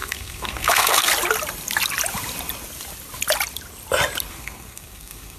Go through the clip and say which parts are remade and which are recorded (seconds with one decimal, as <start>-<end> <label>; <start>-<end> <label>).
0.0-1.1 remade; 1.1-4.3 recorded; 4.3-5.4 remade